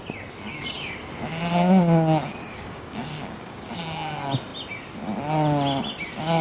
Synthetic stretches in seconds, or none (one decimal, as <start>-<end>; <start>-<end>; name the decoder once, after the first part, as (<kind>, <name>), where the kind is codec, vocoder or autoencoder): 2.4-3.8 (codec, DAC)